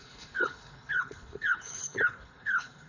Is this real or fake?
fake